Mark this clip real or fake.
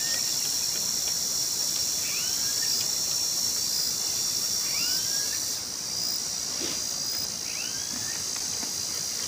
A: real